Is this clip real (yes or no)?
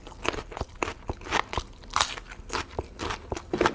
yes